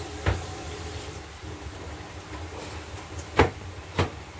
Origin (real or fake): real